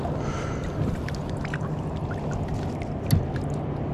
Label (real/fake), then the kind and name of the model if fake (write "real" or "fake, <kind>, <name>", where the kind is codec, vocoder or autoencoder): real